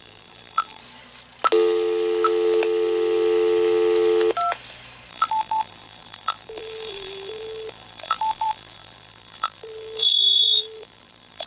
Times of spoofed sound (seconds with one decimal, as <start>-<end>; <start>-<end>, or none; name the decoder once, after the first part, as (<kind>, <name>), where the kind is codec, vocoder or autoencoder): 0.0-0.8 (vocoder, BigVGAN v2); 5.1-11.5